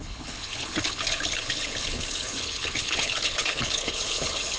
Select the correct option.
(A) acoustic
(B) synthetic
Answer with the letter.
B